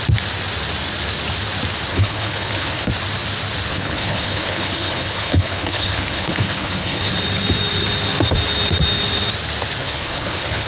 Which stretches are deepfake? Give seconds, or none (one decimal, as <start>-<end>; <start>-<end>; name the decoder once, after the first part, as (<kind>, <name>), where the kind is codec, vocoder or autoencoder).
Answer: 1.9-2.9 (codec, HILCodec); 3.7-7.1; 9.8-10.7